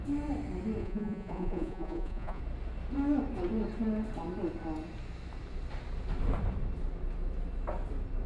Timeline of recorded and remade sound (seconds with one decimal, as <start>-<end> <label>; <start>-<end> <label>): 0.0-0.8 recorded; 0.8-2.4 remade; 2.4-8.3 recorded